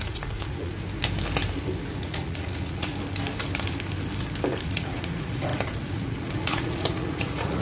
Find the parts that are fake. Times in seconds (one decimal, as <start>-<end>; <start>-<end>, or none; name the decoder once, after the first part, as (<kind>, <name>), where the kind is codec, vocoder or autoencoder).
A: 0.0-0.7 (vocoder, Vocos); 1.9-2.9; 4.6-7.6